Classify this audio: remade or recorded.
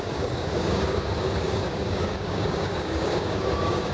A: remade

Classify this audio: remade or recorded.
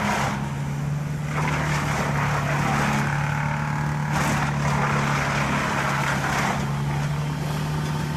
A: recorded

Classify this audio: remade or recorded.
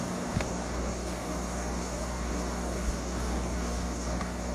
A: remade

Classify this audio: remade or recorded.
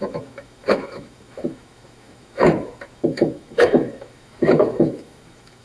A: remade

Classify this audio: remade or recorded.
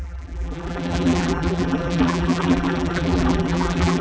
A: remade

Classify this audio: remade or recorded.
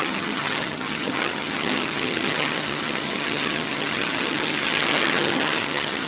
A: remade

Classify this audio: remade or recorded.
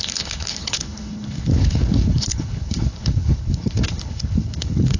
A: remade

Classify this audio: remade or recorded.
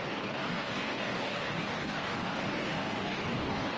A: remade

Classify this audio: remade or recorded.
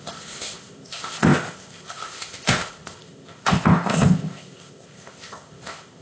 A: remade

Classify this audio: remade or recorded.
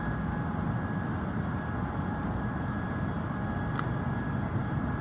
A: recorded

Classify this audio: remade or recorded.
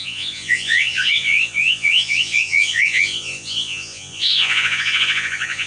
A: remade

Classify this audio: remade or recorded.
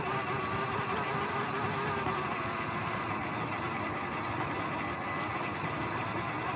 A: recorded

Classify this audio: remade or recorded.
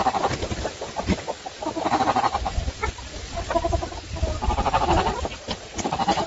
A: remade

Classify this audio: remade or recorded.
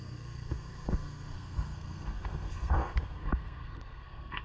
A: remade